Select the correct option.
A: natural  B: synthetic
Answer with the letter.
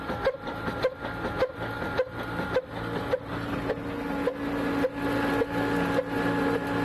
A